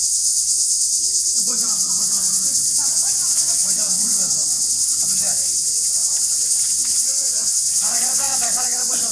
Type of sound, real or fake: fake